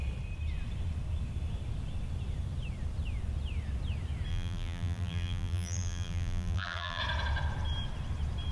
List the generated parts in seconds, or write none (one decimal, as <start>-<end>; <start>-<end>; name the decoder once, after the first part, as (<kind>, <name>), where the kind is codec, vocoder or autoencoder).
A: 4.3-7.0 (vocoder, BigVGAN v2)